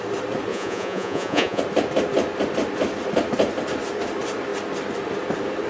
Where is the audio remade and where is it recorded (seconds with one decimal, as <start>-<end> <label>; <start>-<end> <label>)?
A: 0.0-0.5 recorded; 0.5-1.6 remade; 1.6-5.7 recorded